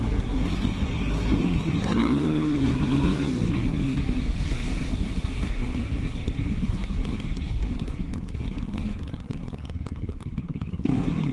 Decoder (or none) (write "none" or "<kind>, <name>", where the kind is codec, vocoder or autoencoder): codec, SNAC